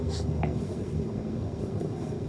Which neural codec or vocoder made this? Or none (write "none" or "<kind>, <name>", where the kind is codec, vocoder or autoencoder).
codec, SNAC